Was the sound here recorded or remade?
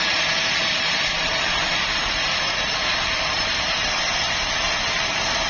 remade